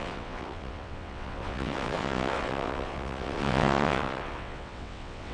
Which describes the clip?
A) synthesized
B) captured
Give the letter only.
A